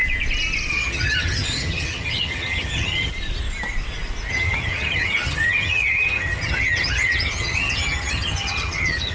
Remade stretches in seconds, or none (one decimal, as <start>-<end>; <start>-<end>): 0.7-3.1; 4.3-9.1

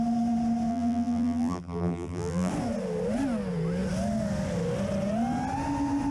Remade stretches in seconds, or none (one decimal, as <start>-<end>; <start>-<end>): 0.7-2.5